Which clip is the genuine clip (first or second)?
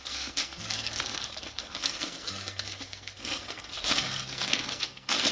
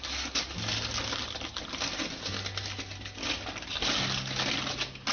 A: second